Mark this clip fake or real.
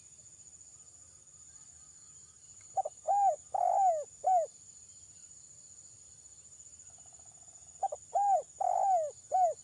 real